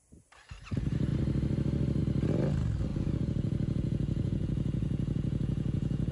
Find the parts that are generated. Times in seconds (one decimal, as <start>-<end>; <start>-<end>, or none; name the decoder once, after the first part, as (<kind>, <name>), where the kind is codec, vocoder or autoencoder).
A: 2.9-6.1 (vocoder, Vocos)